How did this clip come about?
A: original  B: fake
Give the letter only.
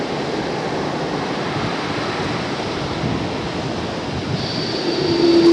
A